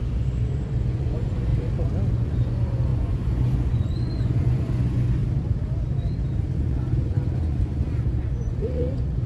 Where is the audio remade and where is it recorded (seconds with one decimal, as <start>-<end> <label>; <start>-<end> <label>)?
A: 0.0-1.5 remade; 1.5-2.1 recorded; 2.1-5.2 remade; 5.2-6.5 recorded; 6.5-9.3 remade